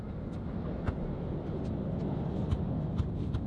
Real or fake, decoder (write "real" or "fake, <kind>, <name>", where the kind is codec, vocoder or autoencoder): real